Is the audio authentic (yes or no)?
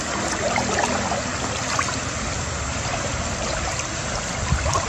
yes